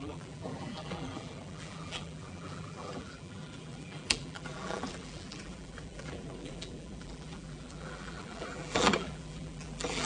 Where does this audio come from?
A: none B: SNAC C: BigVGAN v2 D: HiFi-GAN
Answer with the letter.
C